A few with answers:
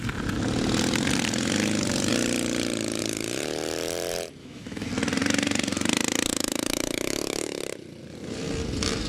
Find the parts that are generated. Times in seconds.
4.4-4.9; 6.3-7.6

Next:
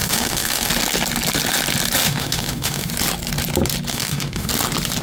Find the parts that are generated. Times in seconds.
0.0-0.7; 2.0-2.9; 3.9-4.5

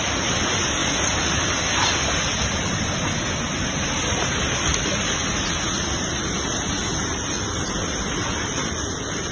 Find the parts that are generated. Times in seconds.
none

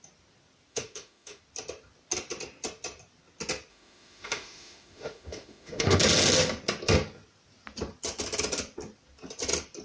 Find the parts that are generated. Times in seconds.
0.7-1.4; 3.7-6.0

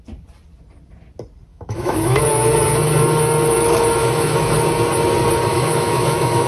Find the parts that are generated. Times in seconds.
1.5-2.2; 4.0-4.5; 5.5-6.5